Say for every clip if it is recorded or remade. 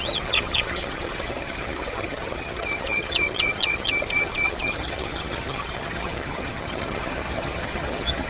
remade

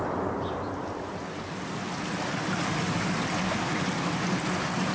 recorded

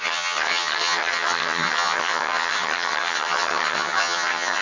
remade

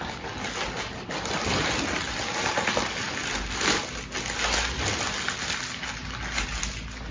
recorded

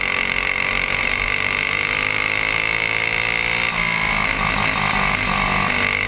recorded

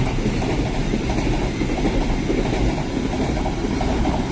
recorded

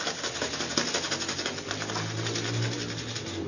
recorded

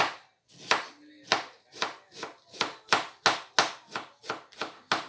recorded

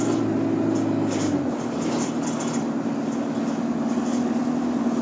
recorded